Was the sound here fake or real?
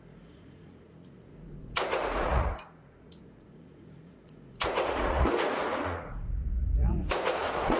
fake